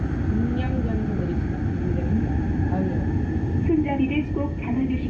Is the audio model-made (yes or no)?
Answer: no